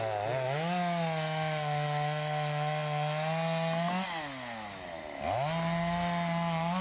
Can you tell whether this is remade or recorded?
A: recorded